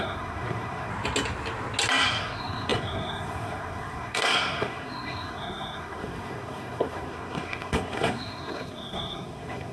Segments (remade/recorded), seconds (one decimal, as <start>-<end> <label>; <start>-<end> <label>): 0.0-0.9 remade; 0.9-2.2 recorded; 2.2-9.7 remade